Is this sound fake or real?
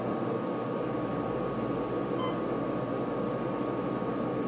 real